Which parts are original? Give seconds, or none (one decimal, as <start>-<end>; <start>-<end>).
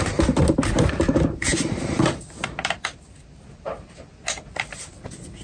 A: 0.0-1.5; 4.1-5.4